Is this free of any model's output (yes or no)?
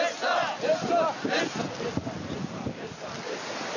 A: yes